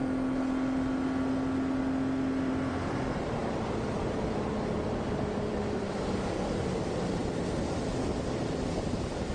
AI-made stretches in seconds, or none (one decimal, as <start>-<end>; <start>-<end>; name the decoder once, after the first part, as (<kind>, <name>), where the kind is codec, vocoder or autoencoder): 2.5-7.2 (vocoder, BigVGAN v2); 8.6-9.3